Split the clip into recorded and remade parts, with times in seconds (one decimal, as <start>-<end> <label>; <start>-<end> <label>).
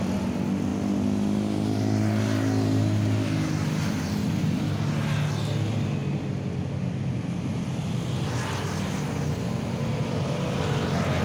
0.0-11.2 recorded